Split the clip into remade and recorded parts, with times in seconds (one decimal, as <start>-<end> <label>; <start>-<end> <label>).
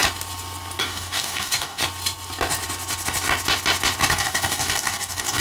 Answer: 0.0-0.8 recorded; 0.8-1.8 remade; 1.8-4.1 recorded; 4.1-5.4 remade